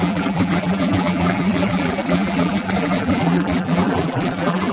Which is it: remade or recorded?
remade